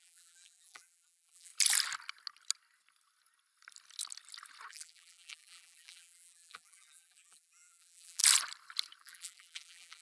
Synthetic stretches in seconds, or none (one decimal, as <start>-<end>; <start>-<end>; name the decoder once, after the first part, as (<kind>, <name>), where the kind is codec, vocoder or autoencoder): 0.0-1.5 (vocoder, BigVGAN v2); 4.7-8.2; 9.0-10.0